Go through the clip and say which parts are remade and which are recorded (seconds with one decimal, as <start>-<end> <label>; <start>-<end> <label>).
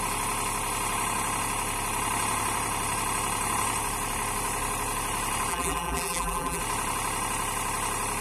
0.0-5.5 recorded; 5.5-6.6 remade; 6.6-8.2 recorded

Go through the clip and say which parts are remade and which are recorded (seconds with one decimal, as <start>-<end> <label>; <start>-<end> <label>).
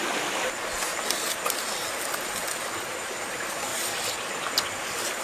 0.0-0.6 remade; 0.6-1.3 recorded; 1.3-2.4 remade; 2.4-3.3 recorded; 3.3-5.2 remade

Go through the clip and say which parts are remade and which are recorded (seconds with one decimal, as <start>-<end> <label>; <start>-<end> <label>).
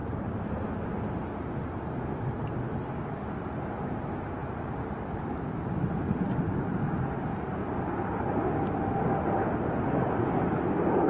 0.0-0.5 remade; 0.5-4.4 recorded; 4.4-6.8 remade; 6.8-7.6 recorded; 7.6-8.4 remade; 8.4-11.1 recorded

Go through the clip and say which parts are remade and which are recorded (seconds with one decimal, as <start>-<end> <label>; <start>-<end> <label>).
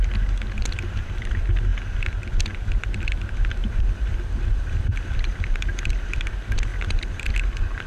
0.0-3.6 recorded; 3.6-6.0 remade; 6.0-6.7 recorded; 6.7-7.3 remade; 7.3-7.9 recorded